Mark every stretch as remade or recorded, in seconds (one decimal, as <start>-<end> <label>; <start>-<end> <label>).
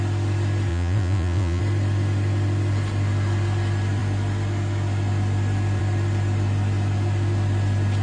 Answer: 0.0-0.7 recorded; 0.7-1.6 remade; 1.6-8.0 recorded